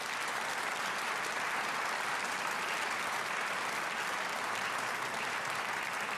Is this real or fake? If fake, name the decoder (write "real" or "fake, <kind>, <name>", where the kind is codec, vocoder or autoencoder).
fake, vocoder, BigVGAN v2